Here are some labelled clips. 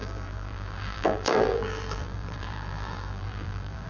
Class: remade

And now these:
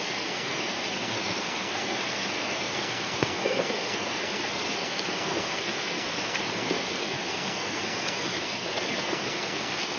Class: remade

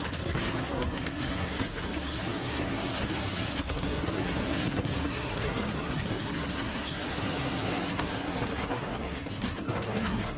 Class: remade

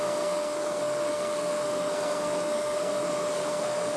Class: remade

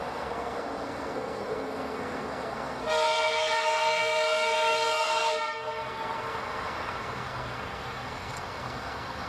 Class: remade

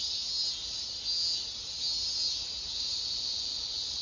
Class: recorded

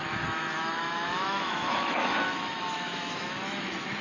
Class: remade